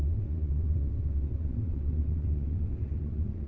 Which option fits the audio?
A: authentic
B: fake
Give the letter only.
B